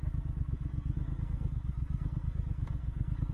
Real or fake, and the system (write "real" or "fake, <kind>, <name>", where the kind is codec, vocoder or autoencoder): fake, codec, SNAC